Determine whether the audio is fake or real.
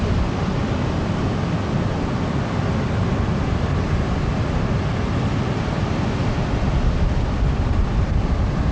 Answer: real